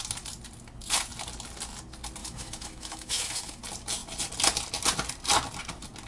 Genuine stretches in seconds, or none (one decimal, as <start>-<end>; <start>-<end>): 0.0-2.2; 3.6-6.1